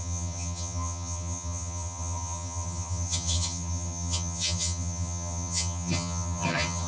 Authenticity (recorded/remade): remade